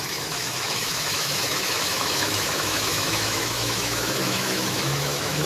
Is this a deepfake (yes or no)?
yes